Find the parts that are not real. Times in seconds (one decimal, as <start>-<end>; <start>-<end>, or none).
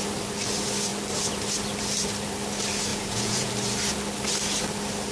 2.9-3.5